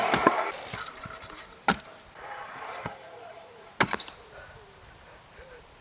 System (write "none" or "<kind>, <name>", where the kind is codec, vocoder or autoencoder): none